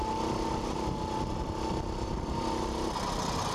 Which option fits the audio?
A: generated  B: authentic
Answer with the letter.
B